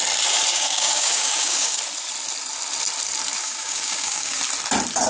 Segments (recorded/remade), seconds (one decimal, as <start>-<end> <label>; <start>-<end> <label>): 0.0-0.5 recorded; 0.5-1.8 remade; 1.8-3.4 recorded; 3.4-4.4 remade; 4.4-5.1 recorded